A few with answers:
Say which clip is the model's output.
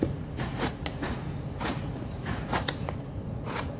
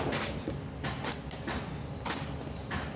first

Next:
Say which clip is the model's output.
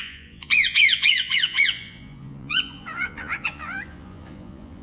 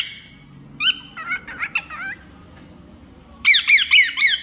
first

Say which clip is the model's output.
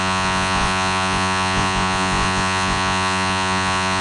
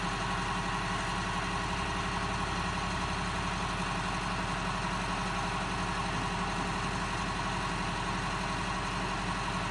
first